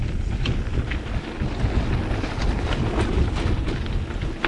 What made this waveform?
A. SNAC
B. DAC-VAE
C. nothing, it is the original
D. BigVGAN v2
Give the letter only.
C